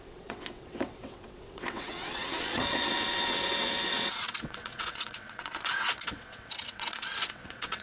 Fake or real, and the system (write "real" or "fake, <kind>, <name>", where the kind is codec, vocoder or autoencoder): fake, vocoder, WaveNeXt